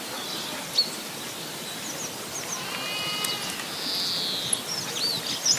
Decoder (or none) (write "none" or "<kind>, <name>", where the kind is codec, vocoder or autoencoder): none